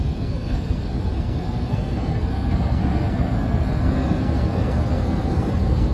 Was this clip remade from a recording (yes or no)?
yes